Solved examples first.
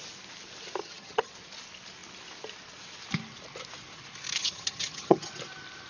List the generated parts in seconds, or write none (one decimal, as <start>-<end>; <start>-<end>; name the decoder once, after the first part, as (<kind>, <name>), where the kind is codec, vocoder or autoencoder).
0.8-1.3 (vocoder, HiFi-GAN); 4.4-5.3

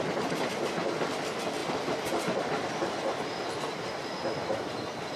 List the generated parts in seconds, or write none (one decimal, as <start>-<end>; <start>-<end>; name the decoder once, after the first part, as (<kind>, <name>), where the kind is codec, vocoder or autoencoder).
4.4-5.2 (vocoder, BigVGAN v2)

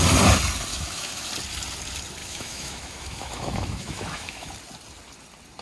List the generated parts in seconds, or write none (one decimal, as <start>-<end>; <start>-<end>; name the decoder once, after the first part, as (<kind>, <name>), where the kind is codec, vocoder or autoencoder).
0.7-1.3 (autoencoder, DAC-VAE); 2.2-4.5